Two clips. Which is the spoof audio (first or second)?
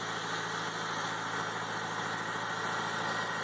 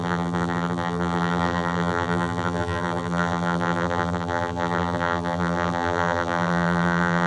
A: second